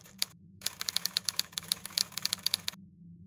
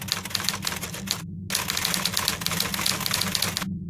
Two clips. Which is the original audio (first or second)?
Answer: second